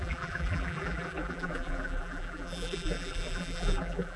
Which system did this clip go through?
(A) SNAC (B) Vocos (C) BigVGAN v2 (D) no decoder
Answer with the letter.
C